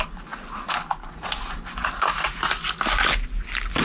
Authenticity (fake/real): real